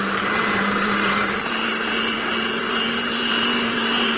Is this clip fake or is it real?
fake